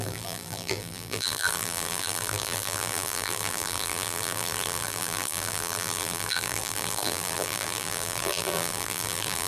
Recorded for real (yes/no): no